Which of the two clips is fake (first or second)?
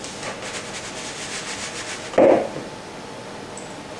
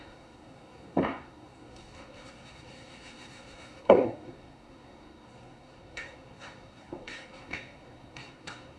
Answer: second